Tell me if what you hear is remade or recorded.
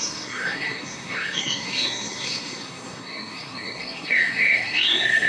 remade